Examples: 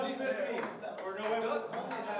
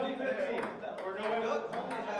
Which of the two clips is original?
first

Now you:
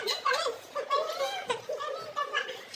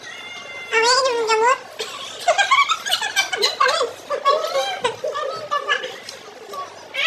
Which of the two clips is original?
second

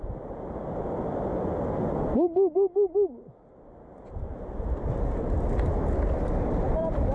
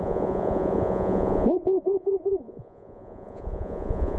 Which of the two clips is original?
first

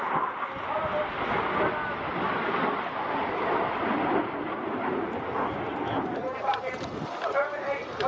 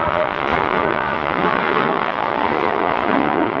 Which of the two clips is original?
first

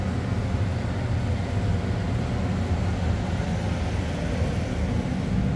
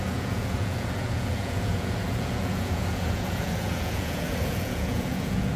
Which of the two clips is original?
first